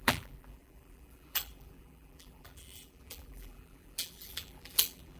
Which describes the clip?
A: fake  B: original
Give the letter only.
A